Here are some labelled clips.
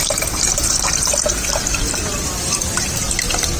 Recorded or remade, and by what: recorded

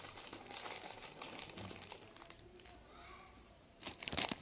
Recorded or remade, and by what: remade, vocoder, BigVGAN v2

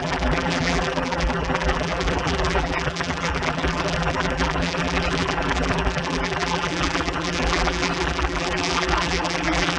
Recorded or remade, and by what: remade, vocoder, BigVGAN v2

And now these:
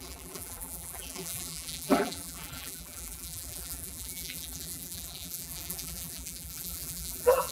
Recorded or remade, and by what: remade, vocoder, BigVGAN v2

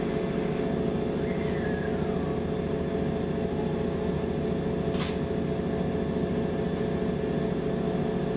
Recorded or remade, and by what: recorded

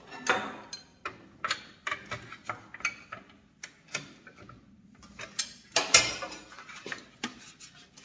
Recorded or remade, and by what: recorded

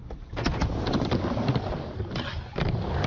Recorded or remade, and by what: recorded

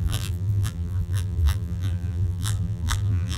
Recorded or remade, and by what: remade, vocoder, BigVGAN v2